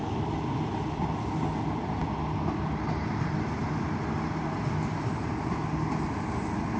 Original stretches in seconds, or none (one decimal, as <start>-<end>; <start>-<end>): 0.0-6.8